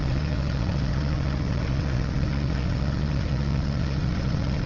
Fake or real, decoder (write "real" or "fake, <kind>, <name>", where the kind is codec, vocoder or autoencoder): fake, vocoder, WaveNeXt